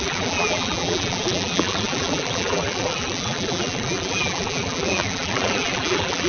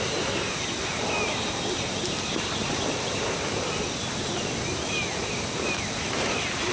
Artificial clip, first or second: first